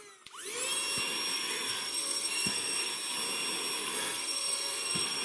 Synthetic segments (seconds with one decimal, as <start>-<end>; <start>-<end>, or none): 1.3-2.9; 3.8-5.2